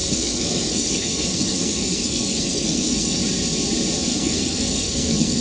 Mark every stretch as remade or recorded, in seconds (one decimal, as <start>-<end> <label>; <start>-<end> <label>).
0.0-3.2 remade; 3.2-4.1 recorded; 4.1-5.4 remade